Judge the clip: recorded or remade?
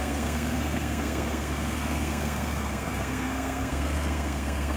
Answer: remade